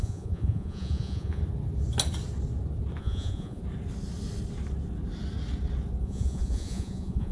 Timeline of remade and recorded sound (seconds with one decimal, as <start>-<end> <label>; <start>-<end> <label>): 0.0-1.4 remade; 1.4-3.0 recorded; 3.0-3.6 remade; 3.6-6.0 recorded; 6.0-7.3 remade